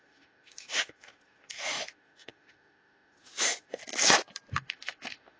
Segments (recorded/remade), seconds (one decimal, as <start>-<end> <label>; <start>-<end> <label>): 0.0-3.8 remade; 3.8-4.5 recorded; 4.5-5.4 remade